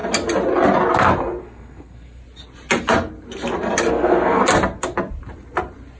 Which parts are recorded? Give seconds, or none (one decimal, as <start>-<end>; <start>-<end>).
0.0-1.4; 2.2-3.9; 4.4-6.0